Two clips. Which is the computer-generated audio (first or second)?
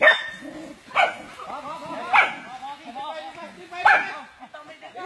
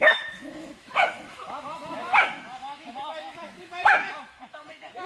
second